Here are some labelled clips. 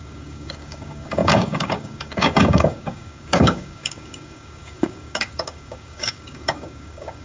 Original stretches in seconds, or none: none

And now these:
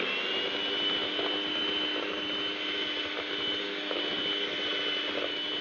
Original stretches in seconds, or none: 0.0-5.6

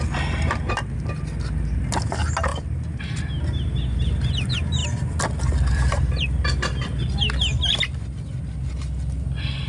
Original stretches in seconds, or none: 0.0-2.5; 3.0-4.8; 7.0-9.7